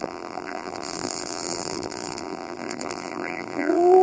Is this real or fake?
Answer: fake